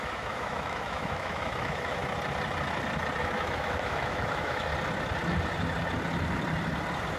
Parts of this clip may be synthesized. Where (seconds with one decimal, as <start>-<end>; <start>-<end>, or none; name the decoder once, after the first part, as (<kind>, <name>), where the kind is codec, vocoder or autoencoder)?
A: 0.0-2.0 (autoencoder, DAC-VAE); 3.2-4.7